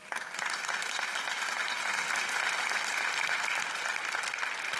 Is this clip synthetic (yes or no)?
no